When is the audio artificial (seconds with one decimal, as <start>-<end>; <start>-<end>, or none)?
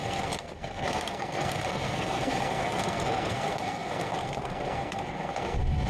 0.0-5.9